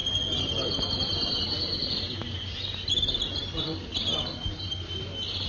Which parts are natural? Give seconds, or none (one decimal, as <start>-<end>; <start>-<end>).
0.0-5.5

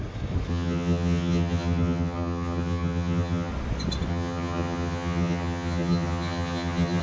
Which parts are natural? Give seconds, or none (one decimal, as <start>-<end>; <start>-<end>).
0.0-0.5; 3.5-4.1